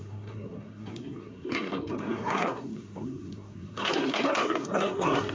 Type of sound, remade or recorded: remade